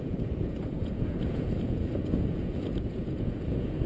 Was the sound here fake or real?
fake